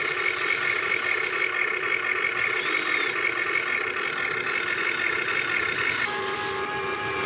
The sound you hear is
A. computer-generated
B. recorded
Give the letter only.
B